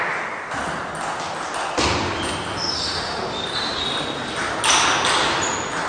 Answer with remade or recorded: recorded